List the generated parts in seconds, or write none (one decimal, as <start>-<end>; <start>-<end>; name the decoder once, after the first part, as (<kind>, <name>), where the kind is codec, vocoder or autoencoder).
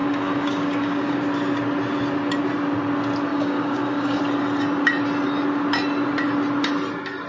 0.0-1.2 (codec, DAC); 3.3-4.2